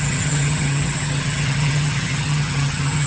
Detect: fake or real fake